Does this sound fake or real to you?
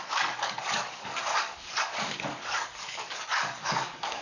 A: fake